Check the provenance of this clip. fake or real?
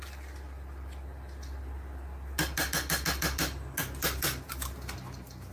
real